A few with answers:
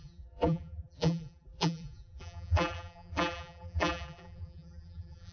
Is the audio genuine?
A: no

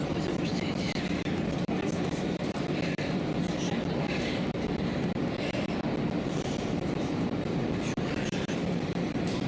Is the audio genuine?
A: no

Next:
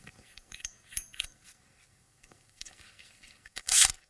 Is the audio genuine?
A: no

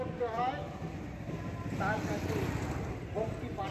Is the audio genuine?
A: yes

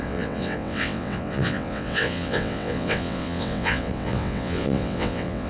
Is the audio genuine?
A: no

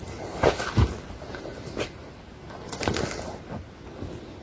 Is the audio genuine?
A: yes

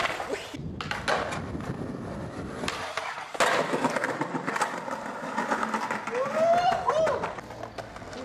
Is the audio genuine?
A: yes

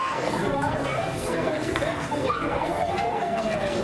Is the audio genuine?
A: no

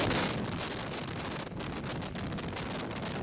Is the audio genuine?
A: yes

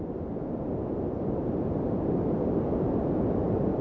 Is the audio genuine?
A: no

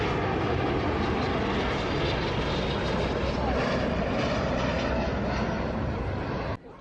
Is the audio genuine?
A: yes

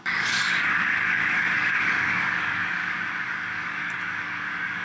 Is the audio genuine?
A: no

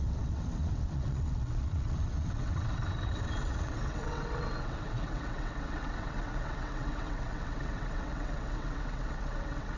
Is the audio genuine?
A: no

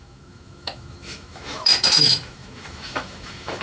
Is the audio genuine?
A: no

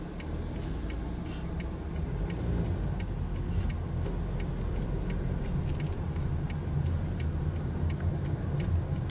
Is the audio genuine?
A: yes